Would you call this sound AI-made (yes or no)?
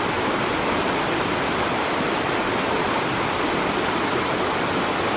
no